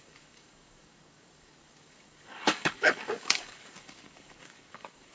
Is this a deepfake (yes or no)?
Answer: yes